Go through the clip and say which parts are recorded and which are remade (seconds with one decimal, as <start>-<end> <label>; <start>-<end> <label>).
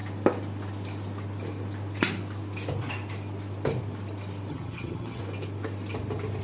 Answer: 0.0-4.5 recorded; 4.5-5.2 remade; 5.2-6.4 recorded